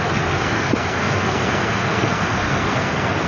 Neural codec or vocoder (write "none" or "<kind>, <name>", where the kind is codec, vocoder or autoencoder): codec, SNAC